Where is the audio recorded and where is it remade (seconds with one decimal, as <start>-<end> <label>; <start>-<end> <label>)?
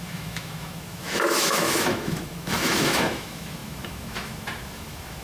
0.0-5.2 remade